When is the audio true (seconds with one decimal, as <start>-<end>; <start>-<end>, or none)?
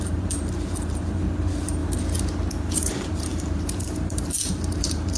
1.8-2.5